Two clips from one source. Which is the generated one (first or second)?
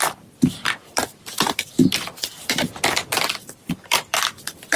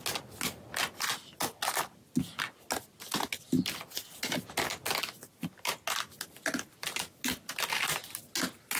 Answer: first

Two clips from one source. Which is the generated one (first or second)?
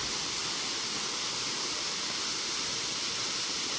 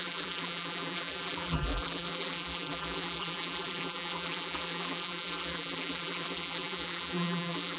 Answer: second